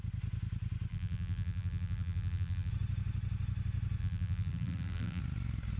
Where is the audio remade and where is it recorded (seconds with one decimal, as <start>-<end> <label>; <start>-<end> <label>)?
0.0-0.9 recorded; 0.9-2.7 remade; 2.7-4.0 recorded; 4.0-5.2 remade; 5.2-5.8 recorded